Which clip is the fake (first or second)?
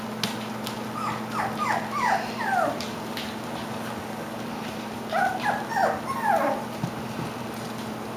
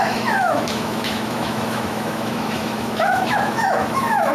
second